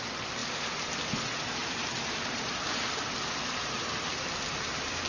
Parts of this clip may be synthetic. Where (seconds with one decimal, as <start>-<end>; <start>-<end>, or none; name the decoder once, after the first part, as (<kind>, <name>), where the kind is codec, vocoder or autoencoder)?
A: 1.6-5.1 (vocoder, BigVGAN v2)

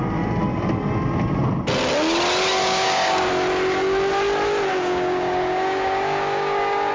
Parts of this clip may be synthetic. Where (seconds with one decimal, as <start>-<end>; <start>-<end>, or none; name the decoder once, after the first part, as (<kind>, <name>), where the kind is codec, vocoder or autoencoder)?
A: 2.6-3.3 (codec, DAC); 4.7-6.9

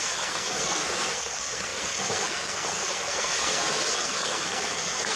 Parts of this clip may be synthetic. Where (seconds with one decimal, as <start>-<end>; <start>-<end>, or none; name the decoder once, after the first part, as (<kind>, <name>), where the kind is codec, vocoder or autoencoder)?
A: 0.0-5.2 (codec, SNAC)

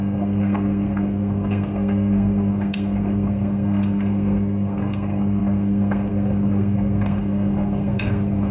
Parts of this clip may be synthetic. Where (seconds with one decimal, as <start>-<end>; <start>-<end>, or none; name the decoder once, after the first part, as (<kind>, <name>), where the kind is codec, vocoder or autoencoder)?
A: 0.0-8.5 (codec, SNAC)

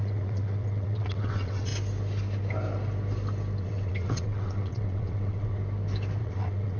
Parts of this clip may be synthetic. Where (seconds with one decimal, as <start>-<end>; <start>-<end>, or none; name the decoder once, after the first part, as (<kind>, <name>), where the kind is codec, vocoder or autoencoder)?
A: 0.0-1.7 (vocoder, WaveNeXt); 3.6-5.6; 6.2-6.8

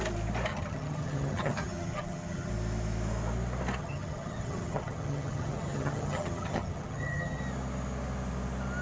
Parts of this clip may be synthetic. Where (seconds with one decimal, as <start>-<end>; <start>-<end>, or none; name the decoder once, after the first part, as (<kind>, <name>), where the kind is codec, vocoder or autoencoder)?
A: 0.5-2.5 (vocoder, HiFi-GAN); 3.8-7.4